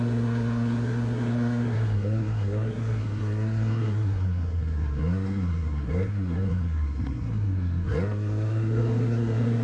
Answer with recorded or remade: remade